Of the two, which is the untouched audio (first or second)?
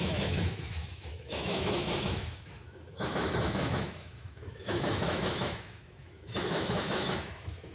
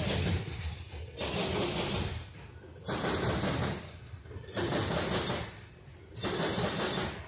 second